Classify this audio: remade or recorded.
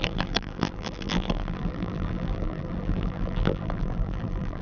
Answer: remade